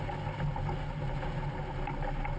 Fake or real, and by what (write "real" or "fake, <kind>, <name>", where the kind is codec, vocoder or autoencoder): real